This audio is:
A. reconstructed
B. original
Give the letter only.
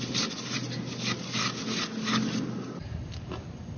B